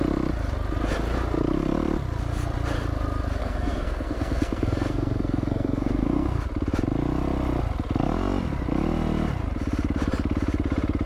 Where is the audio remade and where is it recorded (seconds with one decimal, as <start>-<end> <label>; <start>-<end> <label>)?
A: 0.0-3.4 recorded; 3.4-6.4 remade; 6.4-11.1 recorded